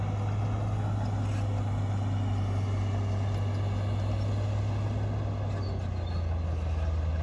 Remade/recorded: recorded